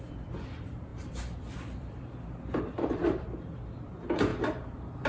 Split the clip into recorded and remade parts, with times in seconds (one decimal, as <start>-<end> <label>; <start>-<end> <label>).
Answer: 0.0-4.3 remade; 4.3-5.1 recorded